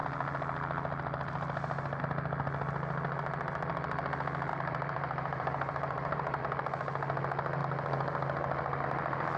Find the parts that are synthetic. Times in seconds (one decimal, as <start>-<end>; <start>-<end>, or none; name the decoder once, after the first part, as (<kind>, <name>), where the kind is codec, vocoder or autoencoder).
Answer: 4.5-6.4 (vocoder, BigVGAN v2)